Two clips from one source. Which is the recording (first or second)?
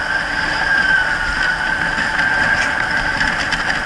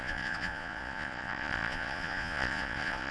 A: first